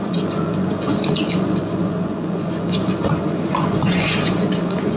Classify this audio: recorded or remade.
remade